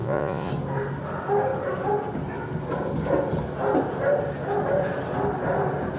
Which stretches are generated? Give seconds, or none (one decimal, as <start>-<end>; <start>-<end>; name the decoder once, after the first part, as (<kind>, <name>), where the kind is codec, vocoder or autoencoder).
0.0-0.5 (vocoder, Vocos)